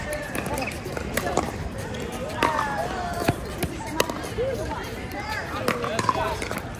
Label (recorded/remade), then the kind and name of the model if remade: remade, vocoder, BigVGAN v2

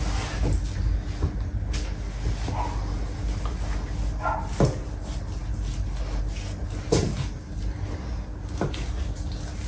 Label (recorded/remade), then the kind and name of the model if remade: recorded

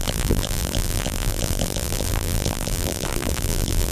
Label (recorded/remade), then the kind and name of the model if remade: remade, vocoder, BigVGAN v2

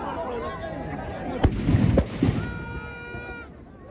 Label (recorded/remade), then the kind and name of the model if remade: recorded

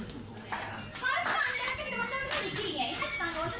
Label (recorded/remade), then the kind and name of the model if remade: recorded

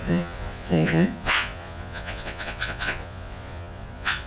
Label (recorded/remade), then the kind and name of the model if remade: remade, vocoder, Vocos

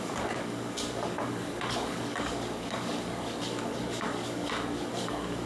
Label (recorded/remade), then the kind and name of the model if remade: remade, codec, DAC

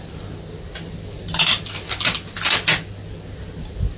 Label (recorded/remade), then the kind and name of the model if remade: recorded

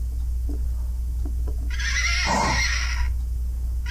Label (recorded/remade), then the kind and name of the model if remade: recorded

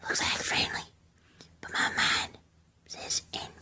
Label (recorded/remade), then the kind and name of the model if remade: recorded